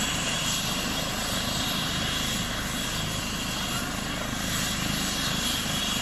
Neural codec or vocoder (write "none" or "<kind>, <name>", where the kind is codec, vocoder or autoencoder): none